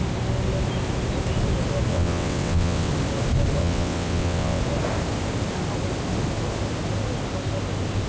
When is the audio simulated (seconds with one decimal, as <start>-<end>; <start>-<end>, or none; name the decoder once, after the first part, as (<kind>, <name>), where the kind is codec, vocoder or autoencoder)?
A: 1.9-2.9 (vocoder, WaveNeXt); 3.6-4.6